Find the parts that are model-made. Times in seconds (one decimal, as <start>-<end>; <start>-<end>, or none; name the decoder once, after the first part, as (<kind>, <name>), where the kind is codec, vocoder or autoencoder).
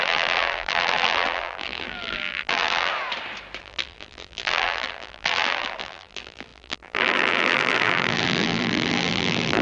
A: 0.0-2.9 (vocoder, BigVGAN v2); 3.6-9.6